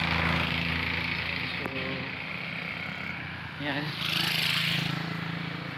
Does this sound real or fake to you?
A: real